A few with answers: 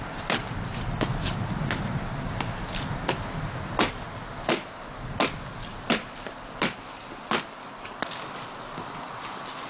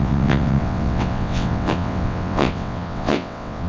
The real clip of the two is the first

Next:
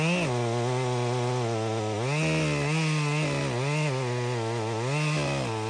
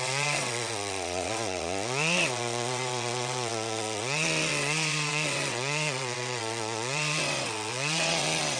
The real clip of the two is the first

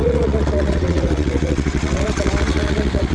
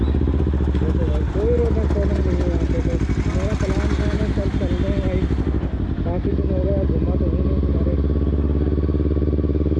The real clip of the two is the second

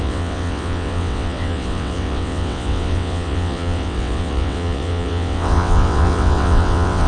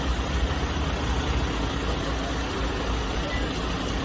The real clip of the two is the second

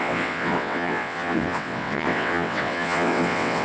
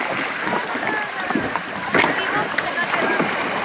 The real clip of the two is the second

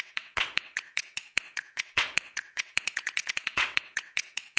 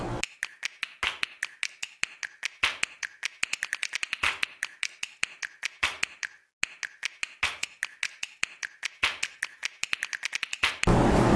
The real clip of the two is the second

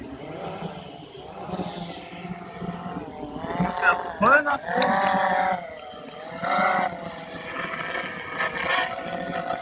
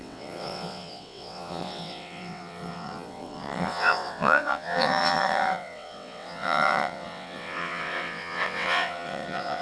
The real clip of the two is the first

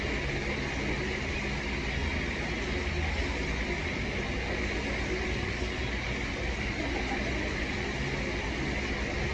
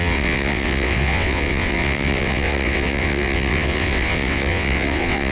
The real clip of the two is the first